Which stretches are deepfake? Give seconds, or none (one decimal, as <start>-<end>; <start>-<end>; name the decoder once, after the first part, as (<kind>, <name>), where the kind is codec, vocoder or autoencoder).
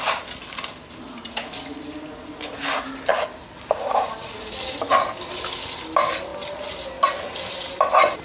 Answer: none